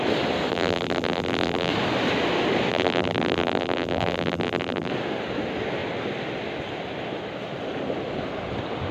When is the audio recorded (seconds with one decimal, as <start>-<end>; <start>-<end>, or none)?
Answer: 0.0-0.5; 1.7-2.7; 4.9-8.9

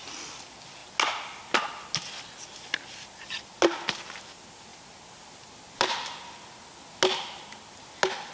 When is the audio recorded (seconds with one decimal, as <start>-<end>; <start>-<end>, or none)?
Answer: 0.0-8.3

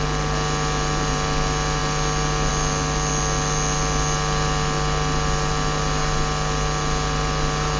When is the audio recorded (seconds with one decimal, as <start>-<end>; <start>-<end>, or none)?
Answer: 0.0-7.8

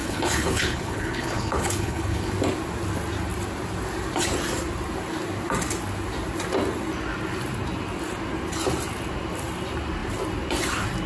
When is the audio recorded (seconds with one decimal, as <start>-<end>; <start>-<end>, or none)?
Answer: 2.3-11.1

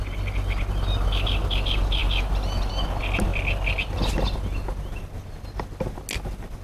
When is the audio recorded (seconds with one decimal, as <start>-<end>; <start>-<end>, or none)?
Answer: 0.0-6.6

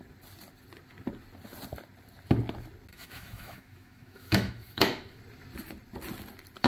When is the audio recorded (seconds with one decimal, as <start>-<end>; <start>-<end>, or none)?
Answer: 0.0-2.9; 5.2-6.7

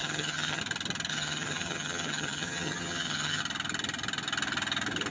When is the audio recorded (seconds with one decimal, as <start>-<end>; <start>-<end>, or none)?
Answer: 0.6-1.1; 3.4-5.1

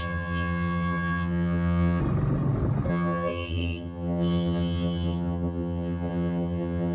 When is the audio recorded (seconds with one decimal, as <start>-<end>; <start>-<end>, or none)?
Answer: 2.0-2.9